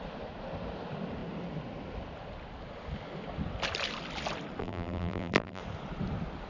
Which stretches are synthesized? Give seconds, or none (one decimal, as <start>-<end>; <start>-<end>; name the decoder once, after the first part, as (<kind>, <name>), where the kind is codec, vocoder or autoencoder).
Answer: 4.6-5.6 (vocoder, BigVGAN v2)